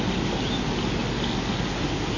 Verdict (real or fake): real